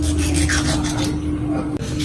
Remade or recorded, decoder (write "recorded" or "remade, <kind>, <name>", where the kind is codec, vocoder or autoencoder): recorded